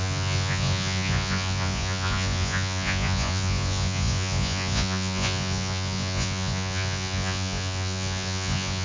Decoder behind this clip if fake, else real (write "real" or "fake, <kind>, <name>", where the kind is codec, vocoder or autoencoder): fake, vocoder, Vocos